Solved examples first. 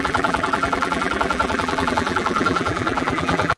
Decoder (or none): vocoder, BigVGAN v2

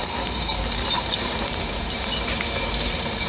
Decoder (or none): vocoder, BigVGAN v2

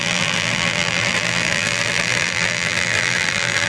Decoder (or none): vocoder, BigVGAN v2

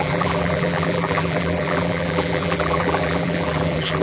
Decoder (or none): vocoder, BigVGAN v2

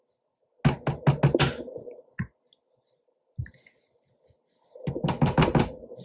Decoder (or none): none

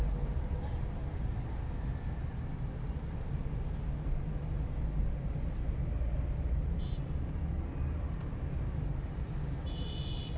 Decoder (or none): none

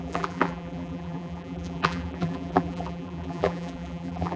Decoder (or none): vocoder, BigVGAN v2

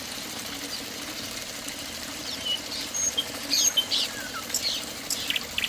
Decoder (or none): vocoder, BigVGAN v2